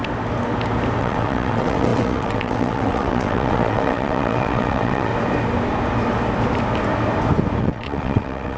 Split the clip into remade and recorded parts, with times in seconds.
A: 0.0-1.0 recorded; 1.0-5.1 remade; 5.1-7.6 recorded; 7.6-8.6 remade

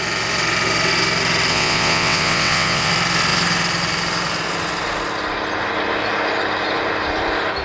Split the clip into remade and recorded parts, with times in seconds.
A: 0.0-1.5 recorded; 1.5-2.9 remade; 2.9-7.6 recorded

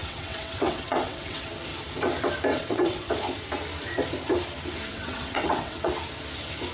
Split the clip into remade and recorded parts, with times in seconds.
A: 0.0-1.5 remade; 1.5-2.5 recorded; 2.5-3.1 remade; 3.1-4.9 recorded; 4.9-5.9 remade; 5.9-6.7 recorded

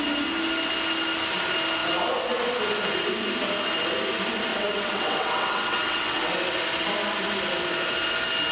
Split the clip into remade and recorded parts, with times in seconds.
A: 0.0-4.5 recorded; 4.5-6.3 remade; 6.3-8.5 recorded

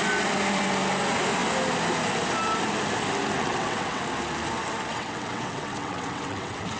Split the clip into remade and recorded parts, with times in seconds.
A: 0.0-3.4 recorded; 3.4-4.0 remade; 4.0-4.9 recorded; 4.9-6.8 remade

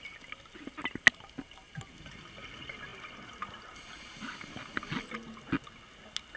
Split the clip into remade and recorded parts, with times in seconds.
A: 0.0-6.4 recorded